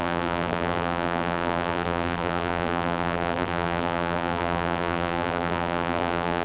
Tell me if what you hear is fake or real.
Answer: fake